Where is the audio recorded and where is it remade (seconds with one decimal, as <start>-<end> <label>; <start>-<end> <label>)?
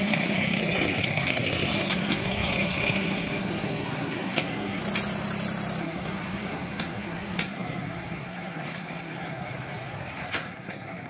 0.0-4.8 remade; 4.8-5.8 recorded; 5.8-11.1 remade